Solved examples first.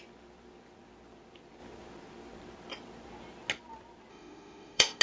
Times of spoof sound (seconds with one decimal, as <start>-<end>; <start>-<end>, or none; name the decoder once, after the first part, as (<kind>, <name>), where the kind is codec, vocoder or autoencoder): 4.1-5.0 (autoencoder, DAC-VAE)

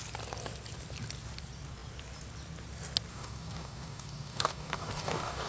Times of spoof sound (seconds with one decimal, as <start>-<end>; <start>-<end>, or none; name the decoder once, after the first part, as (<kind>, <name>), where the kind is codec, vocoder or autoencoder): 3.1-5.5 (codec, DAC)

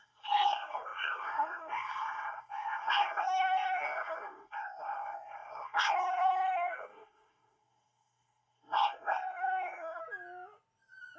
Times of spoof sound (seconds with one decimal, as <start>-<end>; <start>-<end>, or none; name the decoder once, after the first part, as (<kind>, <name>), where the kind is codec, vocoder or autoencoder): 0.0-10.0 (codec, SNAC)

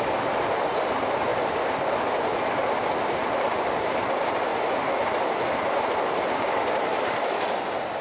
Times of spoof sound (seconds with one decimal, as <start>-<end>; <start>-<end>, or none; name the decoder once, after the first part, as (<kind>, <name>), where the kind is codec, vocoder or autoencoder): 0.0-1.3 (vocoder, BigVGAN v2); 3.2-8.0

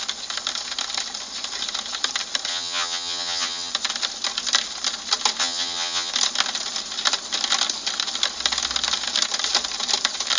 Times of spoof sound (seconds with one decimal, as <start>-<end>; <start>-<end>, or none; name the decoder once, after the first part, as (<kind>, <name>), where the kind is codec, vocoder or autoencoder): 2.5-3.7 (vocoder, HiFi-GAN); 5.4-6.1

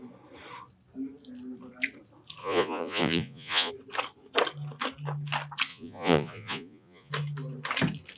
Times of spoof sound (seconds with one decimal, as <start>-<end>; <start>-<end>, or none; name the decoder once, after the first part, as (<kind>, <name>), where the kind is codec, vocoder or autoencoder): 2.4-3.7 (vocoder, Vocos); 5.7-7.1